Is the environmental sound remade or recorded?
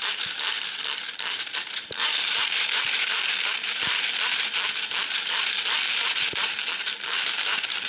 remade